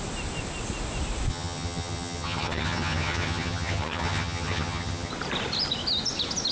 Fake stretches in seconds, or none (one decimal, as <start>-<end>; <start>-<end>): 1.3-5.1